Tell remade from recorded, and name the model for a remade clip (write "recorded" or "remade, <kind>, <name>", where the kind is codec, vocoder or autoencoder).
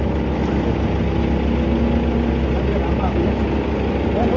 recorded